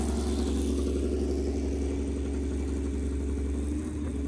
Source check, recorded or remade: recorded